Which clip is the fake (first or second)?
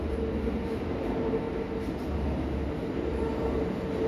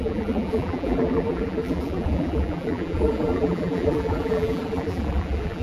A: second